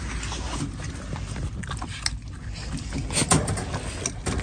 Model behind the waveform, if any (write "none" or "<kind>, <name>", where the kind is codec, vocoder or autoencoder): none